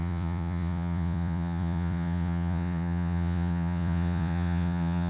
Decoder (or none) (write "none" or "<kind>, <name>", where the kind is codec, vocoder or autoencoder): vocoder, Vocos